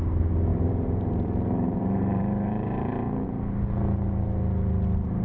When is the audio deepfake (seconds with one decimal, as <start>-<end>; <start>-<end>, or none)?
0.5-3.6